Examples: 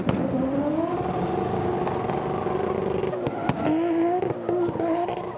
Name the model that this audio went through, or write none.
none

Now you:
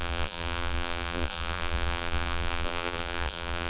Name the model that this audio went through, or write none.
vocoder, BigVGAN v2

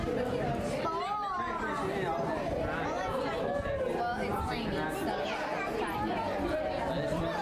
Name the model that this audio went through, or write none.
none